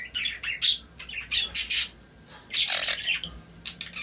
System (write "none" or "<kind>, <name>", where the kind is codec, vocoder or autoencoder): none